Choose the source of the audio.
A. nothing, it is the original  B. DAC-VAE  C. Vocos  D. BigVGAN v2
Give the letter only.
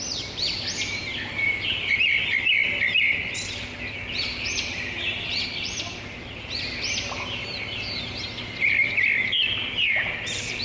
D